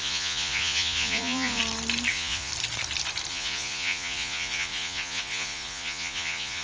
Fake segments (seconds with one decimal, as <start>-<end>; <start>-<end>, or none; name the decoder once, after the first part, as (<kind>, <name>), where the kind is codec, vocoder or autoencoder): 0.0-1.6 (vocoder, Vocos); 2.1-2.5; 3.3-6.6